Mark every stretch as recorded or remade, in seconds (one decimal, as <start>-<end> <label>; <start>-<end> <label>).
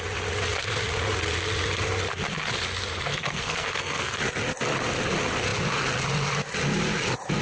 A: 0.0-3.1 recorded; 3.1-4.2 remade; 4.2-7.4 recorded